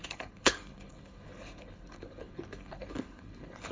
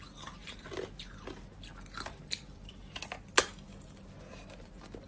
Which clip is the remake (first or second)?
first